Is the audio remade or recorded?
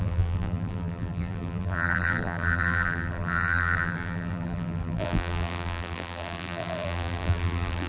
remade